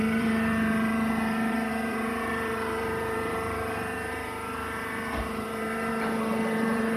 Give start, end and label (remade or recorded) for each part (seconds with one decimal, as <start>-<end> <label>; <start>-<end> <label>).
0.0-7.0 remade